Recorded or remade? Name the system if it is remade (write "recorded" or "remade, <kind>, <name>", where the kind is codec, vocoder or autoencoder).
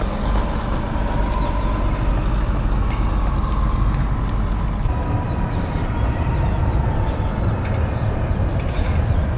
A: recorded